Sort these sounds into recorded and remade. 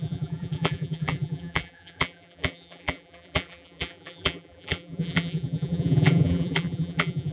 remade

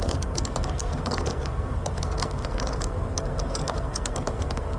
remade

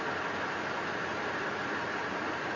recorded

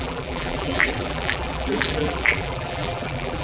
remade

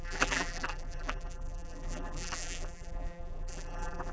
remade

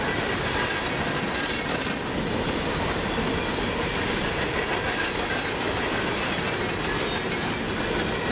recorded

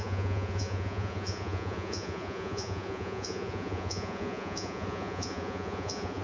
remade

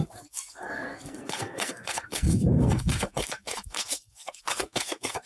remade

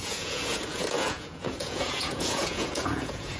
remade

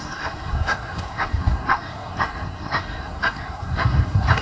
remade